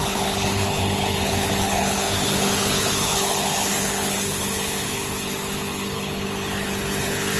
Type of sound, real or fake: fake